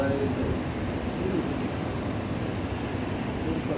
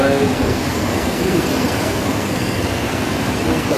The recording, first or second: first